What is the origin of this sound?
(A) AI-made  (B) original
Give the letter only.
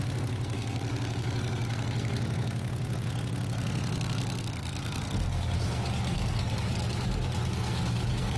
A